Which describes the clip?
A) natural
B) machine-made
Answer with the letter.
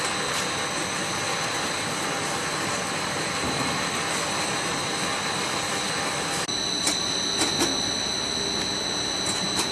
A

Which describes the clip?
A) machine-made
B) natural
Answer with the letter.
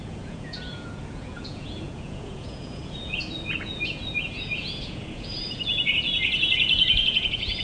A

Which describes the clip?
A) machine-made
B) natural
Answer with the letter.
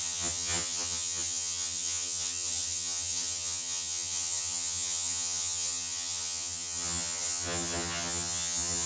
A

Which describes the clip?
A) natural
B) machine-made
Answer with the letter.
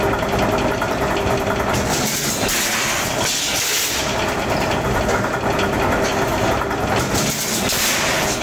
A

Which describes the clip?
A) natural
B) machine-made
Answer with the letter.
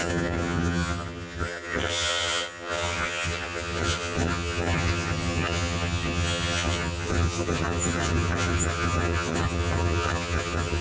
B